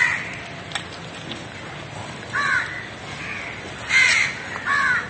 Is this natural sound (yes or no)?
yes